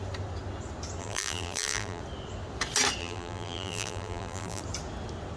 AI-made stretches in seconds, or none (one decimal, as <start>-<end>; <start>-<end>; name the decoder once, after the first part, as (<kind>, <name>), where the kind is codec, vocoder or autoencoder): 1.0-2.0 (vocoder, BigVGAN v2); 3.0-4.6